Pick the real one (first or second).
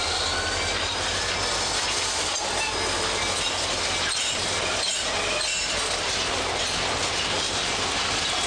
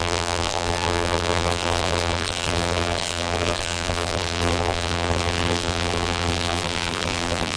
first